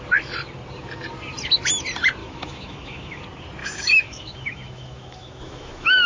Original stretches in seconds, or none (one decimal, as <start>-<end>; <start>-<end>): 0.0-2.2; 3.2-3.6